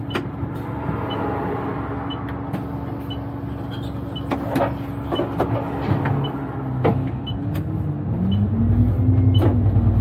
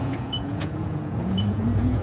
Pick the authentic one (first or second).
first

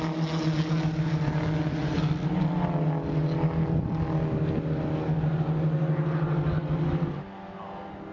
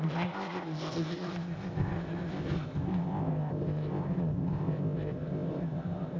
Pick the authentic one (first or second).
first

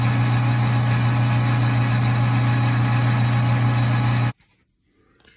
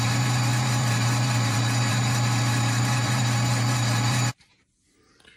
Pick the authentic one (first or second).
first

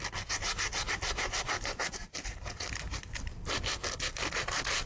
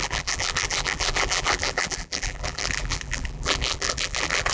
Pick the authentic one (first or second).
first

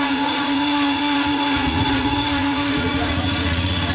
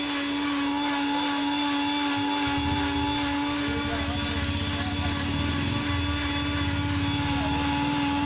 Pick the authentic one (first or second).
second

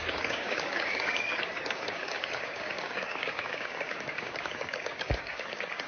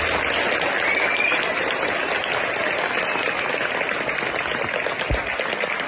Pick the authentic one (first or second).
second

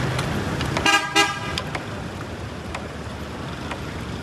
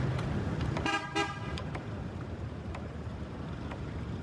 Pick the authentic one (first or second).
first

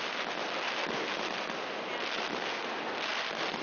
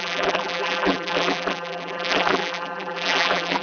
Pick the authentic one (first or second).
first